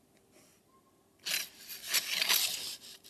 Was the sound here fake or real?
real